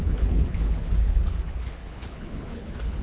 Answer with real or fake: fake